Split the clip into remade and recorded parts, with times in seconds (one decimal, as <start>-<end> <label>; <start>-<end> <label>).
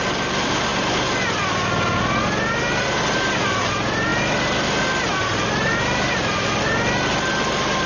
0.0-7.9 recorded